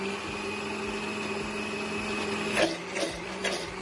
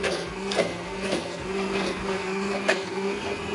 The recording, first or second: first